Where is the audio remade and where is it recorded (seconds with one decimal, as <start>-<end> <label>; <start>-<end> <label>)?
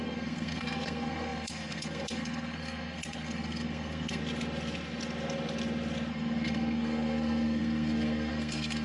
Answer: 0.0-4.2 remade; 4.2-6.1 recorded; 6.1-8.8 remade